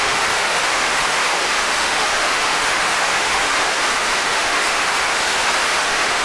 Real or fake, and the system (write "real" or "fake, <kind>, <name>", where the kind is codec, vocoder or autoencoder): fake, autoencoder, DAC-VAE